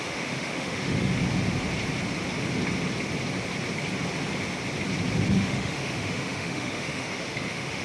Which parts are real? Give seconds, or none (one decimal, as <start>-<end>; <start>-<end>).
1.1-5.3